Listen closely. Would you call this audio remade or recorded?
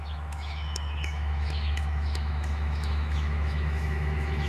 remade